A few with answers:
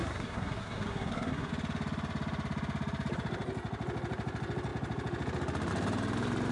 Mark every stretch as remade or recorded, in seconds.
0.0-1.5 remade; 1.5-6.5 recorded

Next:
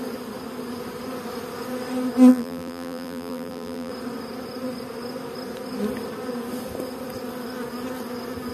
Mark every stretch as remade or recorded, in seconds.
0.0-2.3 recorded; 2.3-3.9 remade; 3.9-8.5 recorded

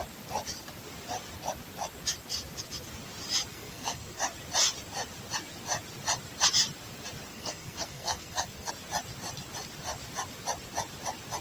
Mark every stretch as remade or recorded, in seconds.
0.0-3.5 recorded; 3.5-4.2 remade; 4.2-7.3 recorded; 7.3-8.7 remade; 8.7-11.4 recorded

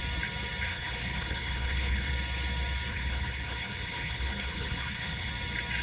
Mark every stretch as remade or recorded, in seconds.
0.0-0.7 recorded; 0.7-2.1 remade; 2.1-2.9 recorded; 2.9-5.3 remade; 5.3-5.8 recorded

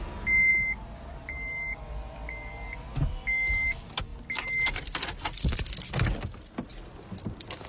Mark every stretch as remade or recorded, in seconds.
0.0-7.7 recorded